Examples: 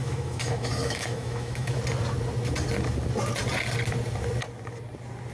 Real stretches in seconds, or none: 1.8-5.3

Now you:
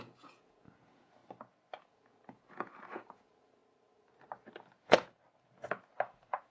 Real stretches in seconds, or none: 1.2-1.8; 3.6-4.8; 5.2-6.1